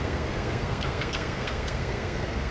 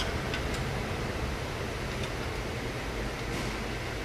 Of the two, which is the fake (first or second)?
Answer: first